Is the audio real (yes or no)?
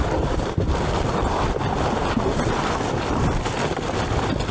no